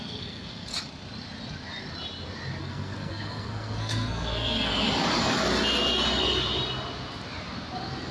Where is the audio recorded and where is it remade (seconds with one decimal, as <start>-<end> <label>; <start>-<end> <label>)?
0.0-0.7 remade; 0.7-2.6 recorded; 2.6-4.7 remade; 4.7-8.1 recorded